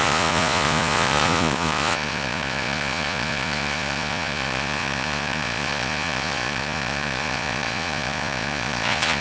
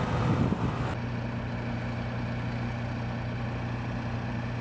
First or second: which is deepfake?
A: first